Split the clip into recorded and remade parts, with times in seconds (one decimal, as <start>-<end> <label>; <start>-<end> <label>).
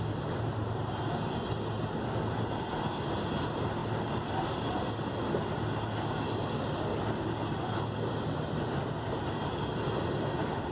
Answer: 0.0-10.7 recorded